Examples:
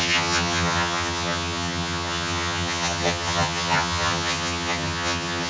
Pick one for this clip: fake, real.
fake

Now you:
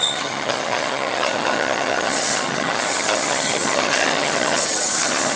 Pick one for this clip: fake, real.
fake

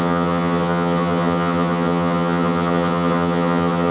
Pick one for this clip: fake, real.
fake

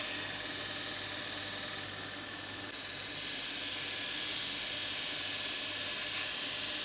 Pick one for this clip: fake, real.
real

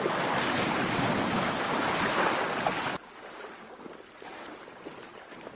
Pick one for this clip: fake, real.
real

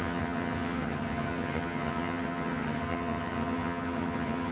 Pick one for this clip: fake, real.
fake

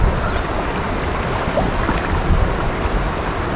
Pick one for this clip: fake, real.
real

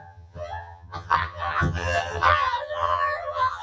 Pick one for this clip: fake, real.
fake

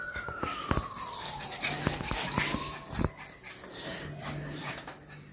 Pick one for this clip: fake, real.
real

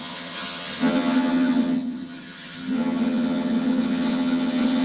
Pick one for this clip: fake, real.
fake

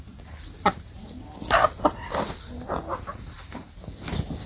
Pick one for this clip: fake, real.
real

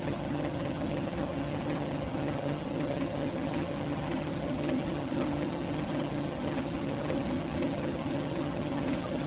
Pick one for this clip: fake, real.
fake